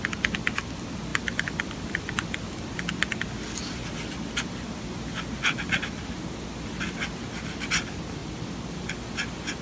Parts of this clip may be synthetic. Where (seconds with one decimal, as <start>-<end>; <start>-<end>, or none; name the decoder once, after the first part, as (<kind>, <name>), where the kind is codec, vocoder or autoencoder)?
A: 1.1-2.8 (vocoder, BigVGAN v2)